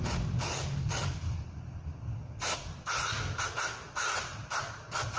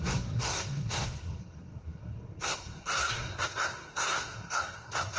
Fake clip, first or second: second